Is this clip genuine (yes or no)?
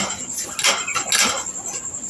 yes